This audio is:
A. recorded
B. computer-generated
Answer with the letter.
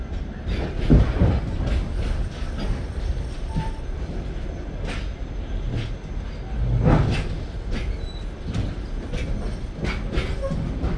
A